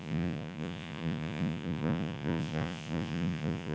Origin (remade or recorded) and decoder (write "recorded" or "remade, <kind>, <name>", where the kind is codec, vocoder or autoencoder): remade, vocoder, Vocos